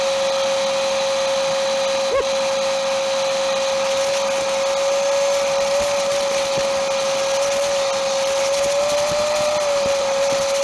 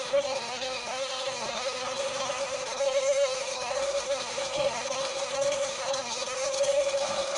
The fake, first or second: second